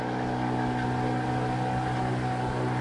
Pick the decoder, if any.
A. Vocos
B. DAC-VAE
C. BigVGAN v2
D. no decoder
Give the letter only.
D